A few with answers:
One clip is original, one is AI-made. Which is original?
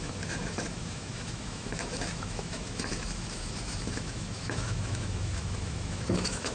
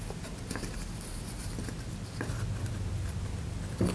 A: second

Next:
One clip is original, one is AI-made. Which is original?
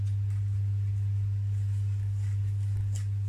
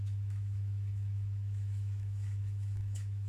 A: first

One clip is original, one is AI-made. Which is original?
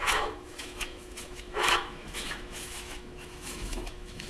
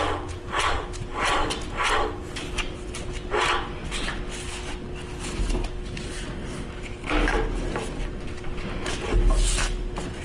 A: second